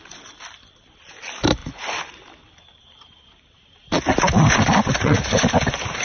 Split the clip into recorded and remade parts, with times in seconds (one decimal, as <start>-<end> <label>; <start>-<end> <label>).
0.0-4.9 recorded; 4.9-5.4 remade; 5.4-6.0 recorded